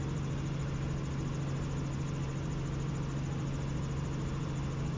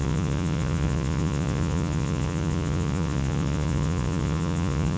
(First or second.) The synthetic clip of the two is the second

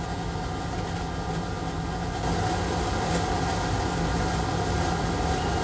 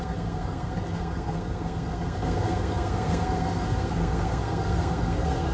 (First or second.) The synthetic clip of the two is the second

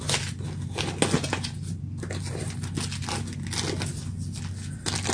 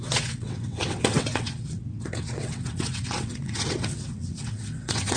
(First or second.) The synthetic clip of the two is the second